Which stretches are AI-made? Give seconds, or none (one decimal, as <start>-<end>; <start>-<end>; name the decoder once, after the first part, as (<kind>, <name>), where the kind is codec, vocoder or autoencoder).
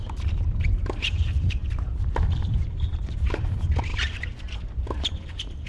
0.0-5.7 (vocoder, BigVGAN v2)